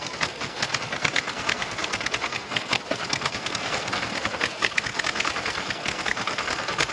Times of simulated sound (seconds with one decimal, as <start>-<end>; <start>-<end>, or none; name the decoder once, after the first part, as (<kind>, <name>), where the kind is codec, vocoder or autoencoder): 0.0-6.9 (codec, SNAC)